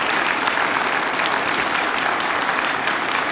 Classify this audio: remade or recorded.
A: recorded